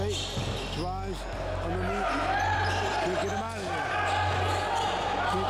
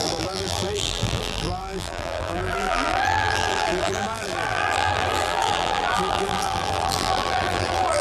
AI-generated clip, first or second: second